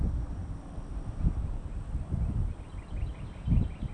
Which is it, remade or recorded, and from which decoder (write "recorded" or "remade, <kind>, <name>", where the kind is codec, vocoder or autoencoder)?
recorded